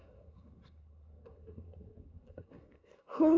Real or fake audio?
fake